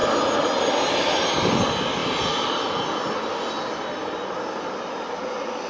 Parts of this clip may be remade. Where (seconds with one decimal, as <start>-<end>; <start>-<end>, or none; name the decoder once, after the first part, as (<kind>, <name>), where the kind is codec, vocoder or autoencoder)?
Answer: none